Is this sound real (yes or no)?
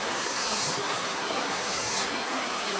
no